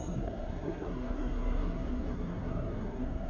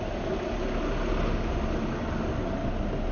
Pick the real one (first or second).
second